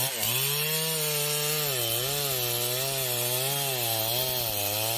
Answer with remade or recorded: recorded